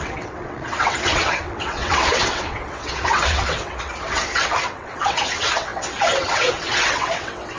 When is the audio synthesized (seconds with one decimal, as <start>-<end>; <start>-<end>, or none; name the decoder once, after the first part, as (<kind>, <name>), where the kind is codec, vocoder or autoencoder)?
0.0-7.6 (vocoder, WaveNeXt)